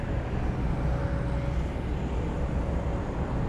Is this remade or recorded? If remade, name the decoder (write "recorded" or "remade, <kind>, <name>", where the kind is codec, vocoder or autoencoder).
recorded